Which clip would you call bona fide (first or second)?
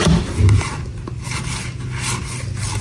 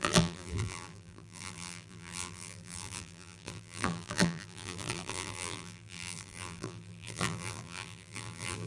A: first